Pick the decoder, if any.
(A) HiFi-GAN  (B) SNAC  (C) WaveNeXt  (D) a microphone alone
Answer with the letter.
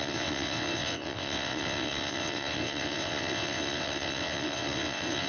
C